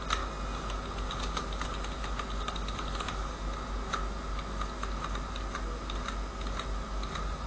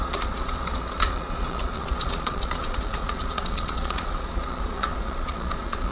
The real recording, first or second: first